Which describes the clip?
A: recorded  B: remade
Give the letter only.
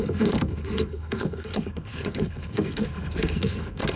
B